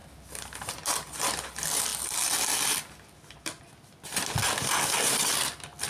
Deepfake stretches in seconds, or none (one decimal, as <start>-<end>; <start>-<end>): none